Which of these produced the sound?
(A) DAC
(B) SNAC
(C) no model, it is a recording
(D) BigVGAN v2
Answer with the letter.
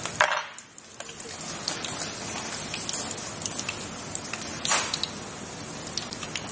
C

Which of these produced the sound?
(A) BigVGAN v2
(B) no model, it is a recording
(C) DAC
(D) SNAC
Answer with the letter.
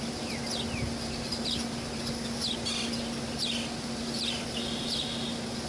B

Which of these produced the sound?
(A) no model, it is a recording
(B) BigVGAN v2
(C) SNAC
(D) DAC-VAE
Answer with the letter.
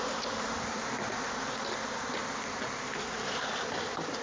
B